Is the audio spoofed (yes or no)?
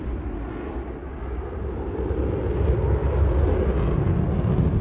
no